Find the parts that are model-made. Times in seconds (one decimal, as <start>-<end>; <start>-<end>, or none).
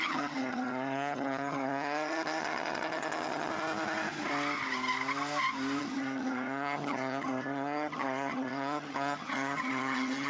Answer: 0.0-3.5; 5.8-10.3